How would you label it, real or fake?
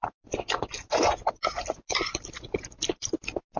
real